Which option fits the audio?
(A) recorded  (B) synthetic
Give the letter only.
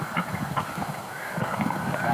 B